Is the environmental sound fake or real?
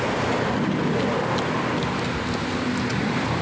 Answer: real